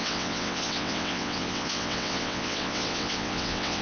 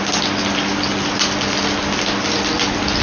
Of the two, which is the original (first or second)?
second